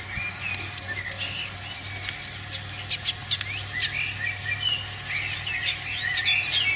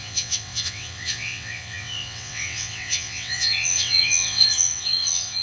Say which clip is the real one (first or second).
first